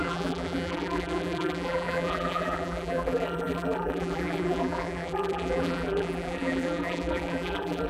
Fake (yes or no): yes